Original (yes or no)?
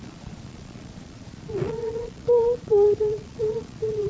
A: no